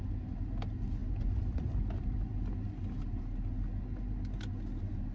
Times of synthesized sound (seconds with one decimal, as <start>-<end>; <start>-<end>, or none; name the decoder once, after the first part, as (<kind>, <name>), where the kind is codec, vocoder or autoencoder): none